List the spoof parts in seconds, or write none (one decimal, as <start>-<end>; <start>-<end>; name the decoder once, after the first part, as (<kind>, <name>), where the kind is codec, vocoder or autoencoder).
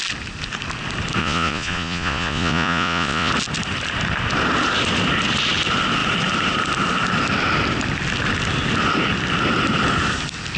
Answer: 1.2-3.3 (vocoder, Vocos)